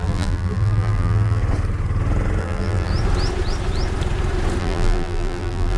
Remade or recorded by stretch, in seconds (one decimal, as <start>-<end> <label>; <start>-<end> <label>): 0.0-1.4 remade; 1.4-2.4 recorded; 2.4-2.9 remade; 2.9-4.6 recorded; 4.6-5.8 remade